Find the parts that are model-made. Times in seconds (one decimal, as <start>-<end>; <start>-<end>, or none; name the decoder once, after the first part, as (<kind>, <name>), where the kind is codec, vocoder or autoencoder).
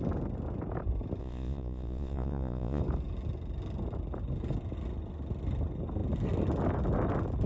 1.2-2.8 (vocoder, Vocos)